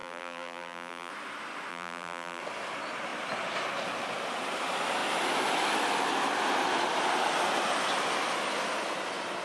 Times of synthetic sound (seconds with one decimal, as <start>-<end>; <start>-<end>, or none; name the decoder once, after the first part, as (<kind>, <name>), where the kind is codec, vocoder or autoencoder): 0.0-1.1 (vocoder, BigVGAN v2); 1.7-2.4